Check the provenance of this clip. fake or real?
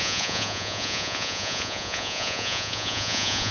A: fake